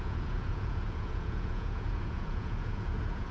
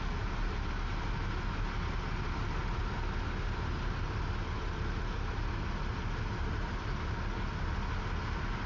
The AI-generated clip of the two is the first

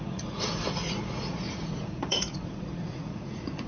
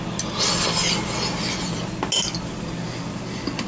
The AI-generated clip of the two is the first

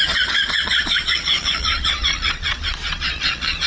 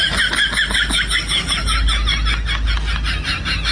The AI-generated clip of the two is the first